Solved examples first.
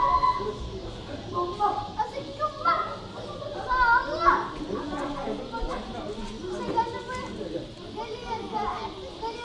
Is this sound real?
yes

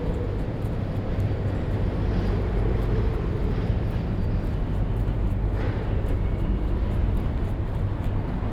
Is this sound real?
yes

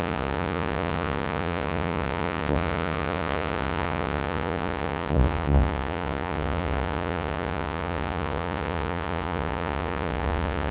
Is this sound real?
no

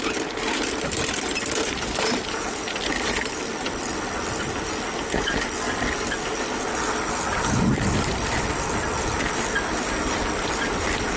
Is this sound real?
yes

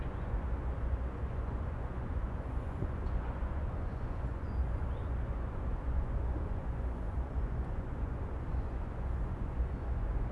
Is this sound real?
no